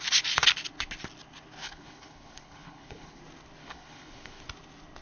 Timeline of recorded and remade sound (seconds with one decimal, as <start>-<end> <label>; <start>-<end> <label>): 0.0-1.6 recorded; 1.6-3.2 remade; 3.2-3.6 recorded; 3.6-4.4 remade; 4.4-5.0 recorded